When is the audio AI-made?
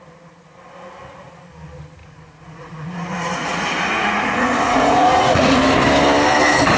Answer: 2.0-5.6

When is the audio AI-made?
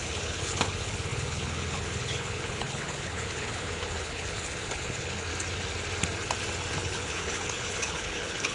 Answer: 0.0-5.3; 6.8-8.5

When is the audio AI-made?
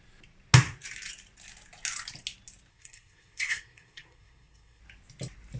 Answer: 2.7-4.8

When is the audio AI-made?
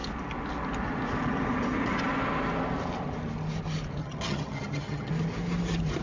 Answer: 4.0-5.1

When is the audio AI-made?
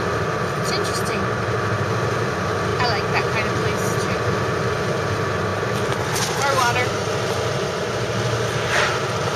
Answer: none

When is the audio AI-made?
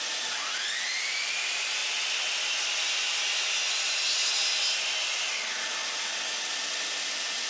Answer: none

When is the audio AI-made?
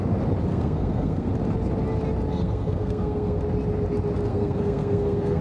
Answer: 0.5-1.3; 2.3-3.4; 4.3-5.4